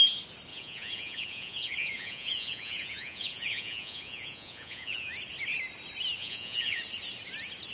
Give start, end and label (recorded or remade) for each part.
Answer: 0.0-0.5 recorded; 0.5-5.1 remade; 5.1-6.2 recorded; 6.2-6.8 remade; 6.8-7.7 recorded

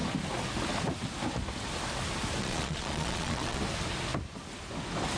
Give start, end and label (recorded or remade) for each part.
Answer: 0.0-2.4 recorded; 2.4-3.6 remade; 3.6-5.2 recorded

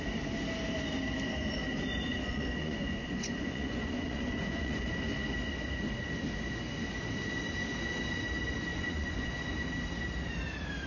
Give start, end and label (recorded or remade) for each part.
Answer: 0.0-2.1 recorded; 2.1-5.0 remade; 5.0-8.7 recorded; 8.7-9.4 remade; 9.4-10.9 recorded